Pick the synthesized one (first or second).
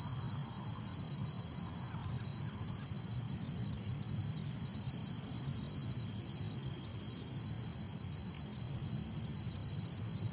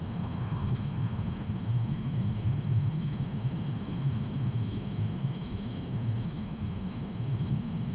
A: second